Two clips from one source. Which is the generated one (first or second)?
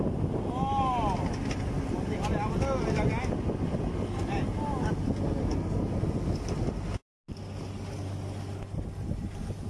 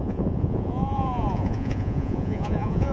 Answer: second